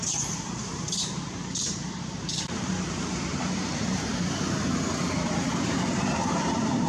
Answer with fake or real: fake